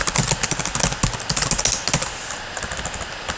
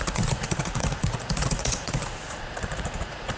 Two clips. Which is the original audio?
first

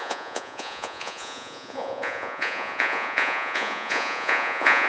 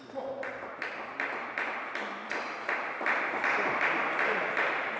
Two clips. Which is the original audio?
second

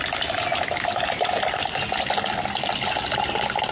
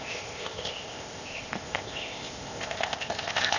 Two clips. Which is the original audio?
first